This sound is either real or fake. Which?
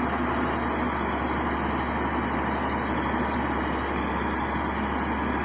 real